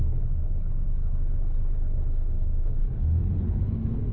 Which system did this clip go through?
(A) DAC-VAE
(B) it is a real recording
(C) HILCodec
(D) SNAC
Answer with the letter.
C